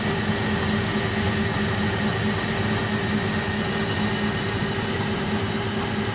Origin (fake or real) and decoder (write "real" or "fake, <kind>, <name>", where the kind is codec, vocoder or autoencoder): real